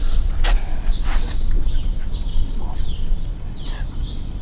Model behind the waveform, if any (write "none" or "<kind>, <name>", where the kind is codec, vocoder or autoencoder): vocoder, WaveNeXt